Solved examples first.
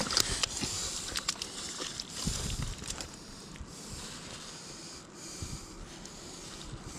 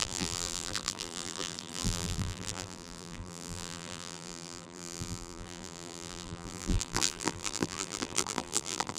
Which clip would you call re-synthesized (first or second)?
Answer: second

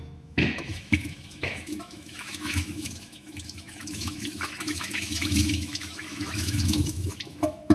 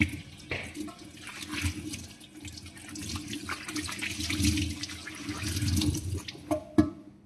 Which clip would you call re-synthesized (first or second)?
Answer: first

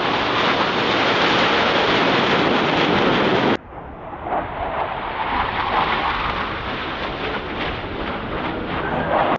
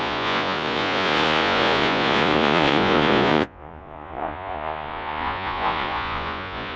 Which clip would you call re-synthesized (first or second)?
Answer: second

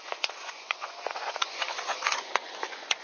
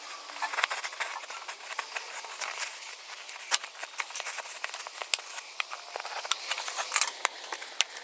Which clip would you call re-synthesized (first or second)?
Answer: first